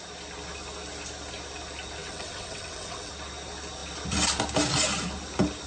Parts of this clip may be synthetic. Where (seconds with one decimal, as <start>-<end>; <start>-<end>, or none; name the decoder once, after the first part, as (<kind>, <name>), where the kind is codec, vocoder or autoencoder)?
2.0-3.1 (vocoder, WaveNeXt)